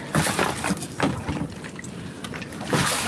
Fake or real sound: real